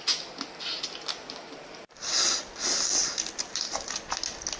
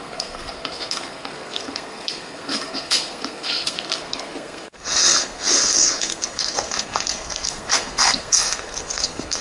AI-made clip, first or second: second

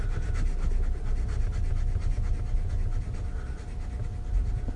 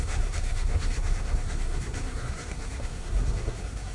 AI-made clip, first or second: second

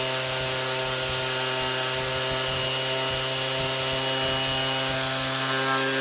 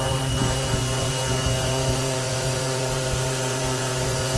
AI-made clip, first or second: second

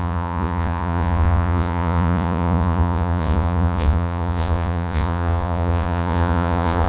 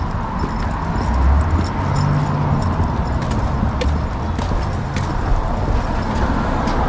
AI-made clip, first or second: first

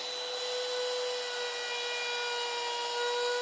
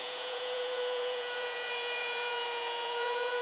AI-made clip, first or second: second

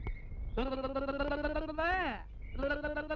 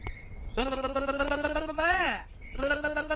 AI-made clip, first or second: second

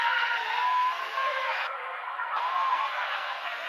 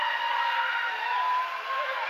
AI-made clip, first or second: first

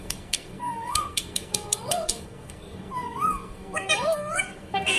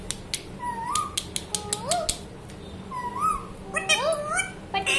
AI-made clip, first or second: first